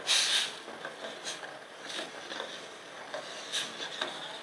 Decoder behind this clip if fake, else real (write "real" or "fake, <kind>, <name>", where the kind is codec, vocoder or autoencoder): real